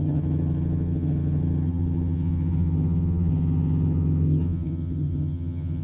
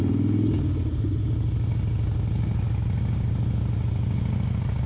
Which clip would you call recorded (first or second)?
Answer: second